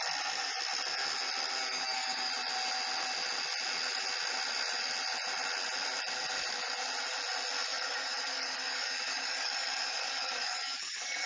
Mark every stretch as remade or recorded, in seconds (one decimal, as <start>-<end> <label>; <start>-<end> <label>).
0.0-1.7 recorded; 1.7-2.3 remade; 2.3-7.7 recorded; 7.7-11.3 remade